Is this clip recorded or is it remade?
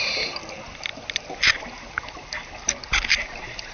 recorded